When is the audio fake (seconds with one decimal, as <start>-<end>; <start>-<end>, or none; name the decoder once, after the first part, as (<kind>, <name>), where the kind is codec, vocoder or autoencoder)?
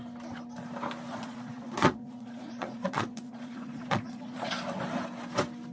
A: 1.1-4.5 (vocoder, Vocos)